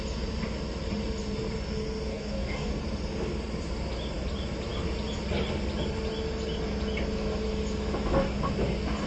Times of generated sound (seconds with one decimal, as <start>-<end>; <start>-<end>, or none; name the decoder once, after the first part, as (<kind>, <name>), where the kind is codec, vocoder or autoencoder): 2.1-2.8 (codec, DAC)

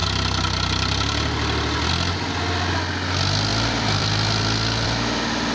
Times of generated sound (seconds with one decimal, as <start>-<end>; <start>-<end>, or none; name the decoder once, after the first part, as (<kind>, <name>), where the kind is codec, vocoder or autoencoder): 0.0-1.9 (vocoder, BigVGAN v2); 3.5-4.4

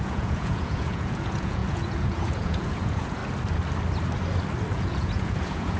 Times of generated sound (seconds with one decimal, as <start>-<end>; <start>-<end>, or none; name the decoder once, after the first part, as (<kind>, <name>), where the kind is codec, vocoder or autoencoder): 0.0-3.2 (vocoder, Vocos); 4.7-5.8

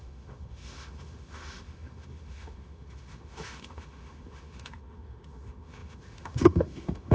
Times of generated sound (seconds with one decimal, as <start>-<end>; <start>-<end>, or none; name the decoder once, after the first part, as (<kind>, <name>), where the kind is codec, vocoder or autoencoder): 0.0-7.1 (autoencoder, DAC-VAE)

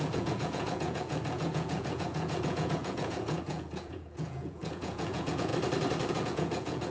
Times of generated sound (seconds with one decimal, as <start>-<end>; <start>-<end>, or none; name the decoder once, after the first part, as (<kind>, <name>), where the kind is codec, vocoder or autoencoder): 0.0-5.5 (vocoder, Vocos); 6.1-6.9